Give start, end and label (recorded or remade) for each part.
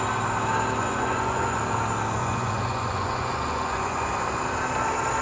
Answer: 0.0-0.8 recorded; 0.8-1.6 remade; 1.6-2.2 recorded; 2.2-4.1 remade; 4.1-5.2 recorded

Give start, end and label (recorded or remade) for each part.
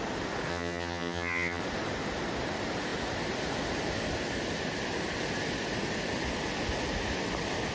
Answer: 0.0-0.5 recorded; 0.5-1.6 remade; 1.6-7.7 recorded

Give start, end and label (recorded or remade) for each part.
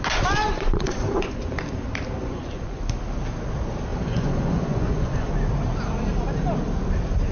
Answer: 0.0-0.5 recorded; 0.5-1.4 remade; 1.4-2.2 recorded; 2.2-2.8 remade; 2.8-3.9 recorded; 3.9-5.3 remade; 5.3-7.3 recorded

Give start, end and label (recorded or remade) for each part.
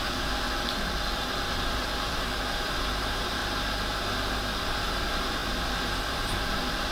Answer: 0.0-3.4 remade; 3.4-4.6 recorded; 4.6-6.9 remade